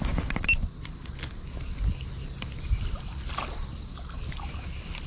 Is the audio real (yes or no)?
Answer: yes